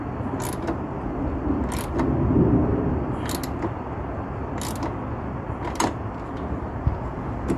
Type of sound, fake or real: real